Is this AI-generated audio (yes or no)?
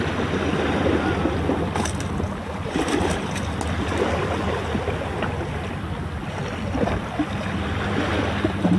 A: no